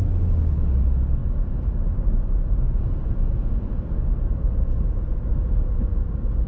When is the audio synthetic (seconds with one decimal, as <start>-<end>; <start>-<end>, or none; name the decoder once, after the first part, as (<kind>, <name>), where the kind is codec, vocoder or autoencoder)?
none